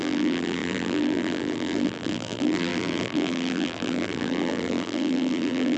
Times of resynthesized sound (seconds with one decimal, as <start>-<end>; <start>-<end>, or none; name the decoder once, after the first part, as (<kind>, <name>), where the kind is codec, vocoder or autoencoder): 0.0-5.8 (vocoder, BigVGAN v2)